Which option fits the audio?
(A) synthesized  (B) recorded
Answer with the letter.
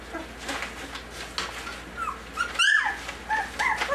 B